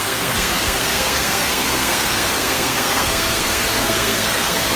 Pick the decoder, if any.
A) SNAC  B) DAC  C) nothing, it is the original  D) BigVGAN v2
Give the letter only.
A